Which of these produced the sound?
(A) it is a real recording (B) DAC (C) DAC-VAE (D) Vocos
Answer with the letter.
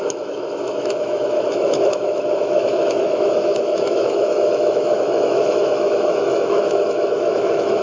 C